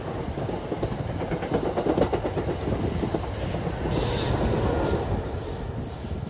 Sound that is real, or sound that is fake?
real